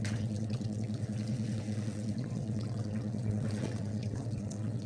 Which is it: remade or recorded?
remade